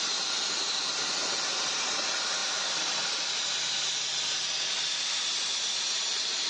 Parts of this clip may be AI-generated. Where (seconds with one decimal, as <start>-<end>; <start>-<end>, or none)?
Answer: none